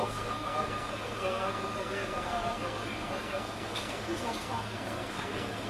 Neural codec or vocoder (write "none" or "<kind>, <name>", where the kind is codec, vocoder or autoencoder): codec, SNAC